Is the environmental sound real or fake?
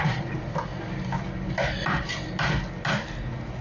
real